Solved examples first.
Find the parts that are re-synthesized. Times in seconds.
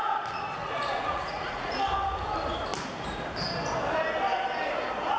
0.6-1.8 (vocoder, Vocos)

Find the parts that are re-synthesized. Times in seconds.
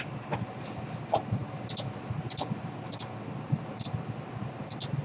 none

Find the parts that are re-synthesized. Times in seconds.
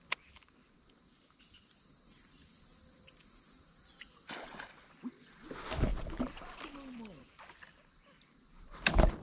none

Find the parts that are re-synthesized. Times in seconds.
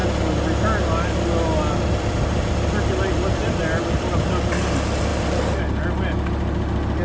none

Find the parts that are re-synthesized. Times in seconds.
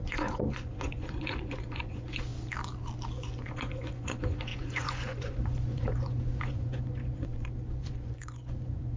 0.0-2.3 (vocoder, Vocos); 3.1-9.0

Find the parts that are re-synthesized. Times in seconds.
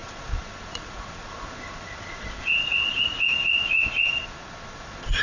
0.0-3.1 (vocoder, Vocos); 4.2-5.2